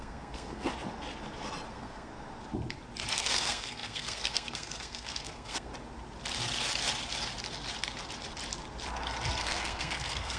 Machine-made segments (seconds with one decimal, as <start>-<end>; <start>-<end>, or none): 0.0-0.7; 1.7-2.1; 3.1-5.7; 9.4-10.4